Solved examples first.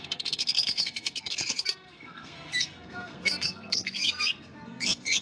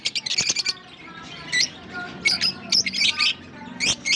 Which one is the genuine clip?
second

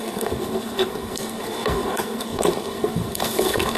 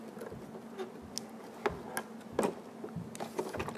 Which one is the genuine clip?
second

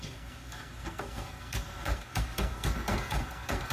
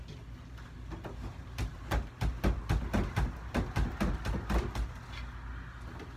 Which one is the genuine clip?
second